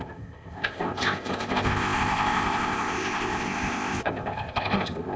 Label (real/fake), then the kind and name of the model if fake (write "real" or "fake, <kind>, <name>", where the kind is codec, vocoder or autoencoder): fake, codec, ZipCodec